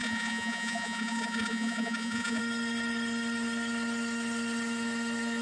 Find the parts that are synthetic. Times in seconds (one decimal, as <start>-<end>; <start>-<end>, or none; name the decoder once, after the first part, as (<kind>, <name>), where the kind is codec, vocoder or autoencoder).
0.0-2.4 (vocoder, Vocos)